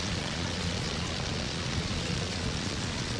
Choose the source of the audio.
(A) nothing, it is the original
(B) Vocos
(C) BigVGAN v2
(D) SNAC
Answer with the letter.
B